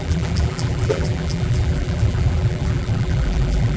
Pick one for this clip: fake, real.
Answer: fake